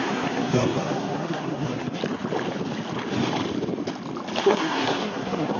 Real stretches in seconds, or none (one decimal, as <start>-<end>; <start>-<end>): 2.0-4.4